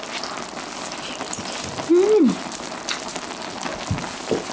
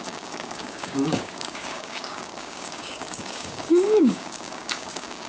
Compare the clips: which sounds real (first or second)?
first